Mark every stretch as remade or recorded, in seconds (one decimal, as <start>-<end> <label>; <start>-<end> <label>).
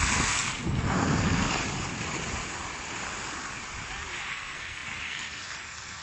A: 0.0-1.6 remade; 1.6-4.3 recorded; 4.3-6.0 remade